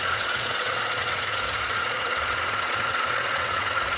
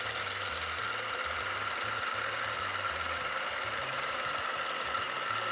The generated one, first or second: first